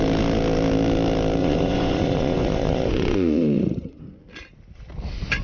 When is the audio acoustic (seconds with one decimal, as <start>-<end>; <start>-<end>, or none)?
0.0-1.4; 4.0-5.4